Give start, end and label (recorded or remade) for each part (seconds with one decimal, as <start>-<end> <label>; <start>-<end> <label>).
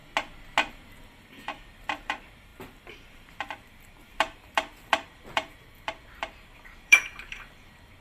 0.0-0.7 recorded; 0.7-8.0 remade